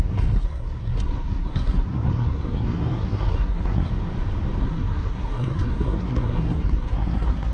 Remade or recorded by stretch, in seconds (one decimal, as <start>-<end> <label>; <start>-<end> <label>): 0.0-3.9 remade; 3.9-4.6 recorded; 4.6-7.5 remade